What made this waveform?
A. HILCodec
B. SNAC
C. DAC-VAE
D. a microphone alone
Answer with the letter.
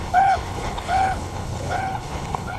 A